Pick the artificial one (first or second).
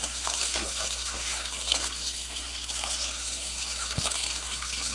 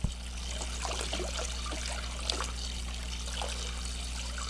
first